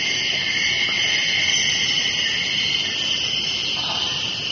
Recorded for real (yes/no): yes